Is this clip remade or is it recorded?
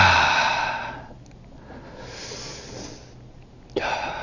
recorded